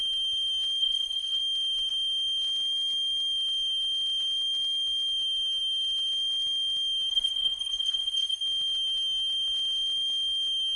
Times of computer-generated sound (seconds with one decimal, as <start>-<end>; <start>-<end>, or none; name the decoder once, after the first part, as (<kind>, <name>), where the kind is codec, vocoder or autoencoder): 0.8-1.4 (codec, SNAC); 7.1-8.4